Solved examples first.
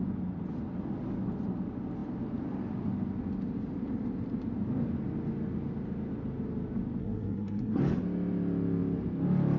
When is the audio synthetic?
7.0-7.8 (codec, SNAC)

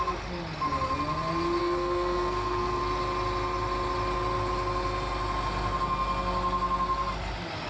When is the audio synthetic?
1.6-2.8 (codec, SNAC)

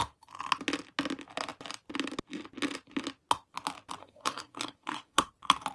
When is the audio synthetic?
4.0-5.3 (codec, SNAC)